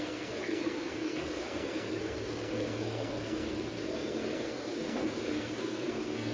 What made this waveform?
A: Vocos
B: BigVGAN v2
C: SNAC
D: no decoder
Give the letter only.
C